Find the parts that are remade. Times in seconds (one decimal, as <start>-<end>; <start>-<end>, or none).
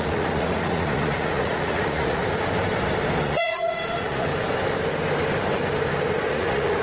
0.0-2.2; 3.2-4.3; 6.3-6.8